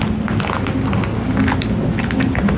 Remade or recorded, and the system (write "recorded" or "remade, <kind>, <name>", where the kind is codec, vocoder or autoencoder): recorded